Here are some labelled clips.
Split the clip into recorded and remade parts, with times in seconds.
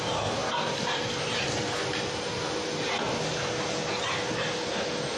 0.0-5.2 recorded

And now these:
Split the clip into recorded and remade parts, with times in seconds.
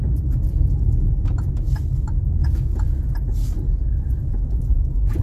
0.0-2.4 recorded; 2.4-3.0 remade; 3.0-4.3 recorded; 4.3-5.2 remade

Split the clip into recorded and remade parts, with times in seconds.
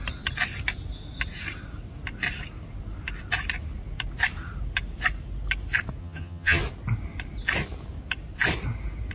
0.0-6.0 recorded; 6.0-6.6 remade; 6.6-9.1 recorded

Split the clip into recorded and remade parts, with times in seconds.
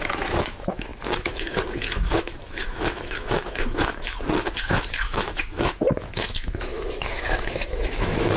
0.0-8.4 remade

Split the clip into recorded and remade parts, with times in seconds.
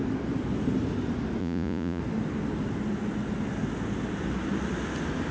0.0-1.4 recorded; 1.4-2.0 remade; 2.0-5.3 recorded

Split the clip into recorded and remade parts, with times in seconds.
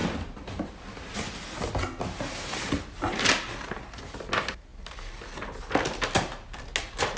0.0-7.2 recorded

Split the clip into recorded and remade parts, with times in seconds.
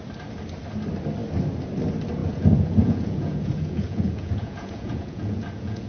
0.0-2.2 recorded; 2.2-5.9 remade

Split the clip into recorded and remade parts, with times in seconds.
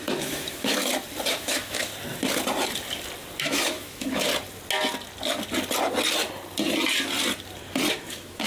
0.0-0.8 remade; 0.8-1.3 recorded; 1.3-1.9 remade; 1.9-3.4 recorded; 3.4-4.3 remade; 4.3-7.9 recorded; 7.9-8.5 remade